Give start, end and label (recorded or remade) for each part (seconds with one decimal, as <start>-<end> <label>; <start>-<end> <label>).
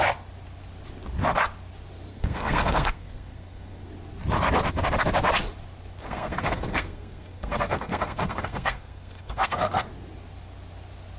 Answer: 0.0-2.1 recorded; 2.1-3.9 remade; 3.9-6.0 recorded; 6.0-9.9 remade; 9.9-11.2 recorded